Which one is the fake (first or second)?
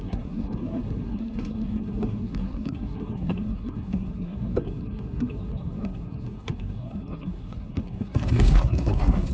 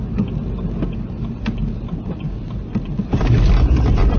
first